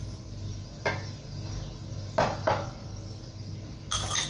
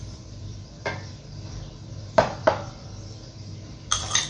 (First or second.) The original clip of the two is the first